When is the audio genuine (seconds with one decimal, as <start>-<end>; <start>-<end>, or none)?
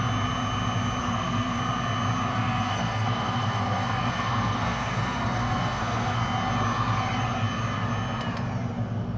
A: 0.0-1.0; 1.6-2.3; 6.2-9.2